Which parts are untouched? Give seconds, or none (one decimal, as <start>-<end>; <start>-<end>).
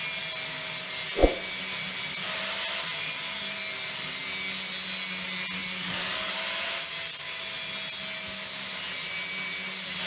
0.0-5.6; 6.3-10.1